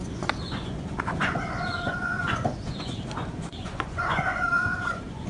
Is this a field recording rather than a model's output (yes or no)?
no